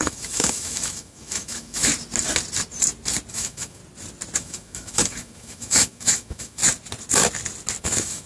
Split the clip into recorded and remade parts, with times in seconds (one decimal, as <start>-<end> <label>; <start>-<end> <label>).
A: 0.0-1.9 remade; 1.9-3.3 recorded; 3.3-3.8 remade; 3.8-4.4 recorded; 4.4-6.6 remade; 6.6-7.8 recorded; 7.8-8.3 remade